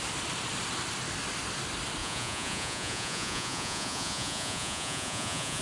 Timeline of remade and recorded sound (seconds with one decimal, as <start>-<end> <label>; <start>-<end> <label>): 0.0-2.0 recorded; 2.0-5.6 remade